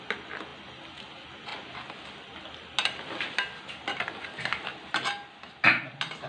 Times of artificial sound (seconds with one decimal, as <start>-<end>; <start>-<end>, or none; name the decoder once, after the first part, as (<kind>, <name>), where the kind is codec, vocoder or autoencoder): none